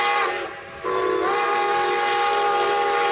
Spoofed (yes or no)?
no